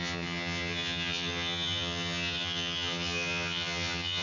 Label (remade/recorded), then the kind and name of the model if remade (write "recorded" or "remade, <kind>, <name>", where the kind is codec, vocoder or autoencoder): remade, vocoder, HiFi-GAN